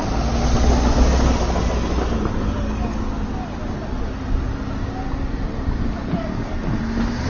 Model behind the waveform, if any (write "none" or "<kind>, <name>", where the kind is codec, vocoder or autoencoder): none